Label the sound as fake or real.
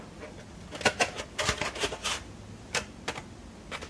real